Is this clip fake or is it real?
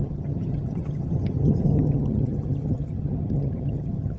fake